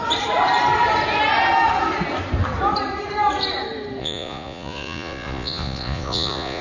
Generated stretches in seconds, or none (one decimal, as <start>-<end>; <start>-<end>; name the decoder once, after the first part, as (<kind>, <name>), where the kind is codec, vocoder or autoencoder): 4.0-6.6 (vocoder, Vocos)